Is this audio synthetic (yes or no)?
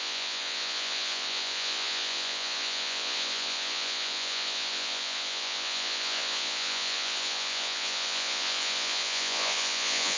yes